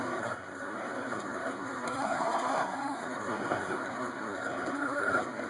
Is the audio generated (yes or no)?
yes